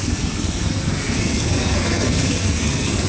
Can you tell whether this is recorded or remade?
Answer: remade